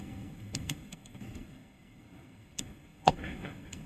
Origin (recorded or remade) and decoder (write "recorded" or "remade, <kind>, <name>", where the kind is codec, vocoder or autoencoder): remade, codec, SNAC